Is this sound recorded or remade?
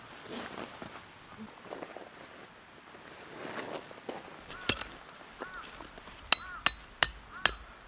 recorded